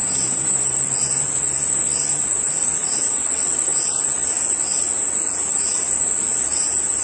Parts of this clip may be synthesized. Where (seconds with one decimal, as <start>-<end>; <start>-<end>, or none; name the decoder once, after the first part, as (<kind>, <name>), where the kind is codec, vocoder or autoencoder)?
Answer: 0.0-0.8 (vocoder, BigVGAN v2)